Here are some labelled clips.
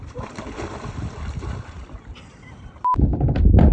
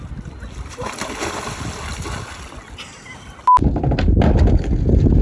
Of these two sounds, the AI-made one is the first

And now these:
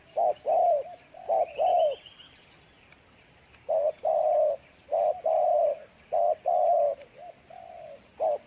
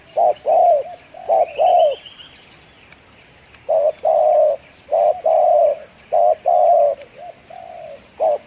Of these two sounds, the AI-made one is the first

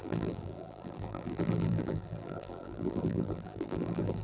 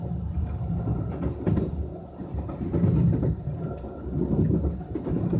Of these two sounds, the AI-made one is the first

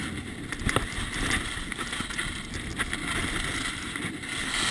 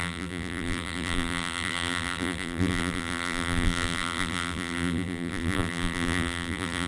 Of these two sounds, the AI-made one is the second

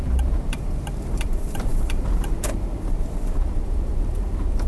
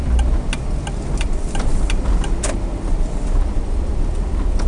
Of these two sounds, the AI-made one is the first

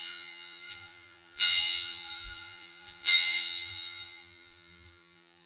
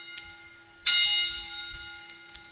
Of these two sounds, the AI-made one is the first